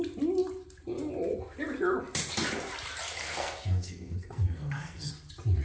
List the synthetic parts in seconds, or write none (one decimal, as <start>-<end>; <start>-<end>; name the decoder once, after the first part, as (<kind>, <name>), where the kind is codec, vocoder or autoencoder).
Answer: 3.2-5.1 (codec, SNAC)